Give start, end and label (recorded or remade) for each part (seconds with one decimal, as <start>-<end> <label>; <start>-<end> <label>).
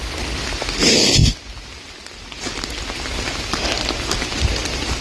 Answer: 0.0-5.0 recorded